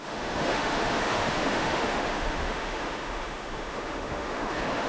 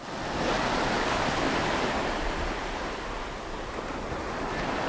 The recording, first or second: second